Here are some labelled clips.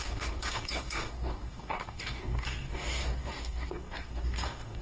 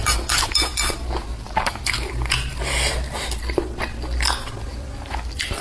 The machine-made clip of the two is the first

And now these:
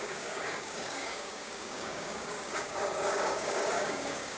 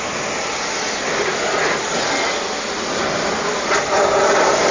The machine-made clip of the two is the first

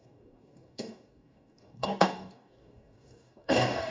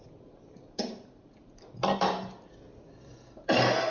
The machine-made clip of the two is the first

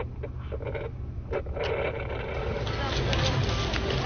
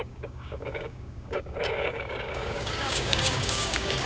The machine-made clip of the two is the second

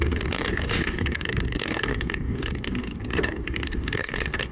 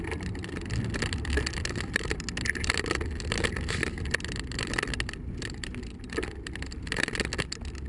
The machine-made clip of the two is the first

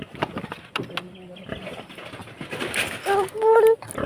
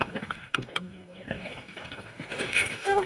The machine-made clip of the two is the second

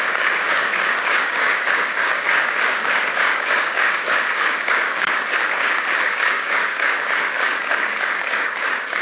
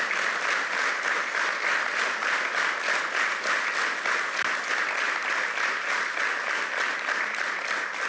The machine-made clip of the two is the first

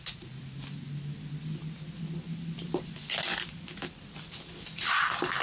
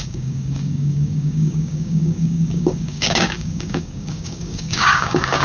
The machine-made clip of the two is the second